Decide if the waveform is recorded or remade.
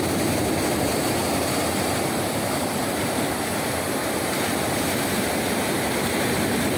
remade